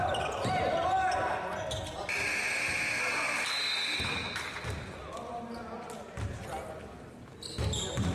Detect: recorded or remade recorded